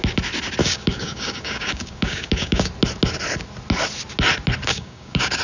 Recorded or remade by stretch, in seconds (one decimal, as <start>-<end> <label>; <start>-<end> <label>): 0.0-0.6 recorded; 0.6-2.7 remade; 2.7-4.7 recorded; 4.7-5.4 remade